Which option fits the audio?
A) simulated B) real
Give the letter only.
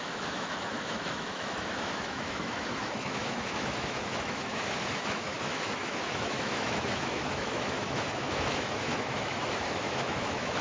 A